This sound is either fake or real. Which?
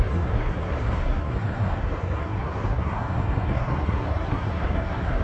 fake